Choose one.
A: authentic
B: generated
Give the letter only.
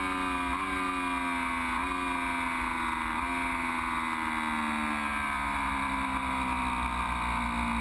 A